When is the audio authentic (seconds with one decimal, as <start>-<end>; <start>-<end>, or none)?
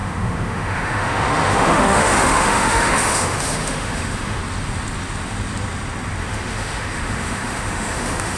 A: 4.4-6.2